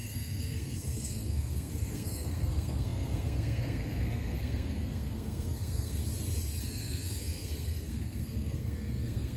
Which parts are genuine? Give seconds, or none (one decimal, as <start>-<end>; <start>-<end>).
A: 6.0-6.6